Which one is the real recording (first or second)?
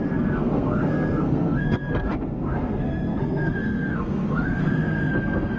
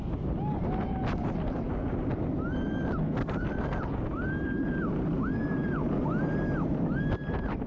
second